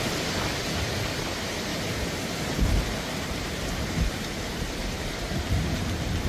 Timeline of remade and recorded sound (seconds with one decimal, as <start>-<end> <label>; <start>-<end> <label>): 0.0-1.7 recorded; 1.7-5.5 remade; 5.5-6.3 recorded